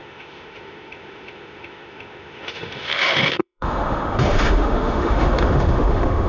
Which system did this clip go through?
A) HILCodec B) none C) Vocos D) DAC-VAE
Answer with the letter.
D